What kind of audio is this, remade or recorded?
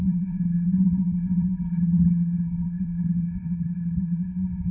remade